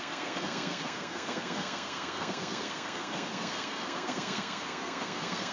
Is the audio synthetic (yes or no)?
yes